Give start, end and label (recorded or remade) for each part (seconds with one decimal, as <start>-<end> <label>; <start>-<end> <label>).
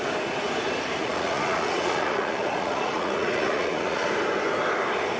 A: 0.0-1.0 recorded; 1.0-4.1 remade; 4.1-5.2 recorded